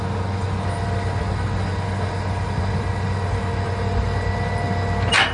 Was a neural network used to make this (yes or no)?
no